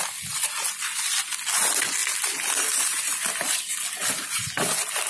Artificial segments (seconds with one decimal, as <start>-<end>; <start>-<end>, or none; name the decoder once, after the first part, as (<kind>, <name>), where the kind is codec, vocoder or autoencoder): none